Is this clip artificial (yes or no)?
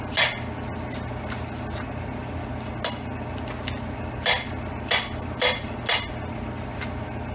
no